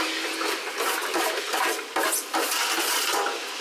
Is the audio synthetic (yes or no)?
no